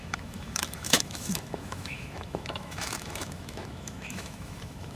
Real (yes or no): no